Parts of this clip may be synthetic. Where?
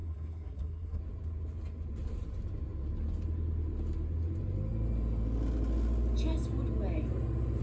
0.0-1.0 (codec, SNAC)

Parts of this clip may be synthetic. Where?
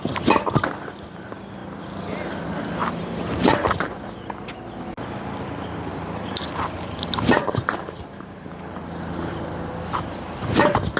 2.8-3.7 (vocoder, BigVGAN v2); 5.9-9.3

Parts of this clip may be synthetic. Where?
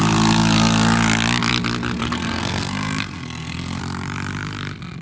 2.0-3.8 (codec, SNAC)